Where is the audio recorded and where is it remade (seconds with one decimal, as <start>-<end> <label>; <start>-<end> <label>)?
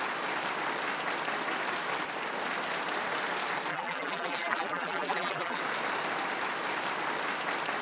0.0-3.7 recorded; 3.7-5.6 remade; 5.6-7.8 recorded